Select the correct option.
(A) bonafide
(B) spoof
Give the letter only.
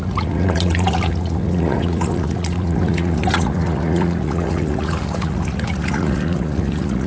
B